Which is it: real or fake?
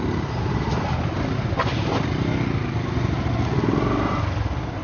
real